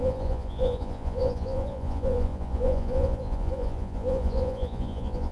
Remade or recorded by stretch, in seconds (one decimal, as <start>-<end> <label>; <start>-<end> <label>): 0.0-5.3 remade